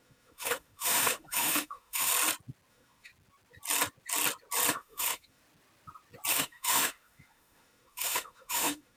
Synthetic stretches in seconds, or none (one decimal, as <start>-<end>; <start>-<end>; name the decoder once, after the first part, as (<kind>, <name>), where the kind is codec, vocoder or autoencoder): 0.0-2.1 (autoencoder, DAC-VAE); 2.7-3.1; 4.7-5.4; 6.3-9.0